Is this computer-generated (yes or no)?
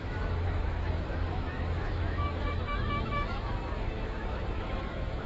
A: yes